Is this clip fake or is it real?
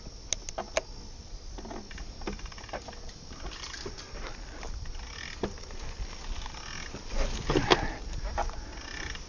real